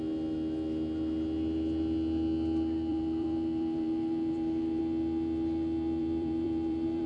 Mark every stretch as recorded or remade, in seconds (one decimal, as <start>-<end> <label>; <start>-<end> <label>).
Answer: 0.0-2.9 recorded; 2.9-4.8 remade; 4.8-6.0 recorded; 6.0-7.1 remade